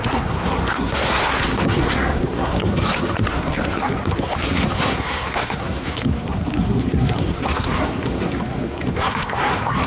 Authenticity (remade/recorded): remade